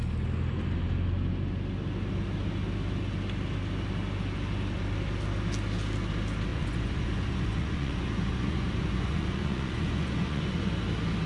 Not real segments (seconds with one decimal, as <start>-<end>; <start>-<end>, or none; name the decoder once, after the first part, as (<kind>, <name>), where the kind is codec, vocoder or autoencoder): 6.5-10.7 (vocoder, Vocos)